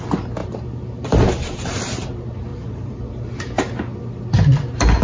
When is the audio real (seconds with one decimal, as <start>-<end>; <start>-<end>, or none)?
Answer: 0.0-0.4; 1.8-2.5; 3.3-5.0